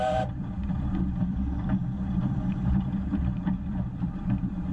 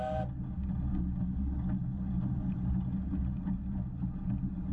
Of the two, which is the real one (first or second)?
second